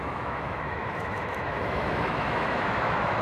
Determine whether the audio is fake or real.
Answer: fake